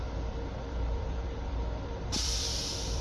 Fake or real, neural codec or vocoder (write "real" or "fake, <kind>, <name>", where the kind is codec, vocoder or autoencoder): fake, vocoder, BigVGAN v2